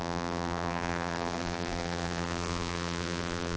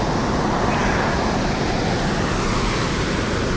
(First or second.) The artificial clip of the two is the first